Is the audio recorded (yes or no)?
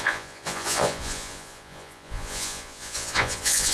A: no